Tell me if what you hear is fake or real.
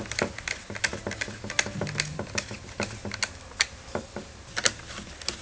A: real